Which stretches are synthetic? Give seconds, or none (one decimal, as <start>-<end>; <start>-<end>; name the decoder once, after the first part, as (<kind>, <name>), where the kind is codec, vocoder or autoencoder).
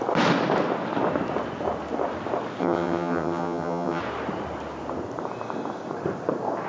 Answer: 2.6-4.0 (vocoder, HiFi-GAN)